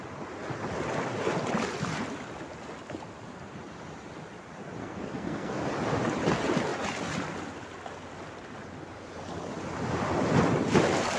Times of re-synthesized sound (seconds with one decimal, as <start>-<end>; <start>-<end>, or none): 4.8-5.6